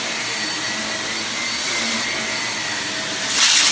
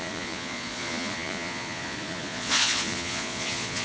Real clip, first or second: first